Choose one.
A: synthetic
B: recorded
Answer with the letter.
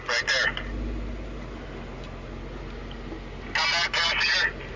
B